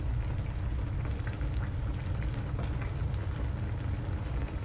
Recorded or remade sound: recorded